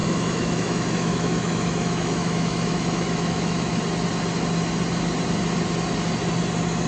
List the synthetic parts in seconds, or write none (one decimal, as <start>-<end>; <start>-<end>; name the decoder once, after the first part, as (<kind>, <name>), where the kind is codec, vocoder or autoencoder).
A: 0.0-3.8 (autoencoder, DAC-VAE)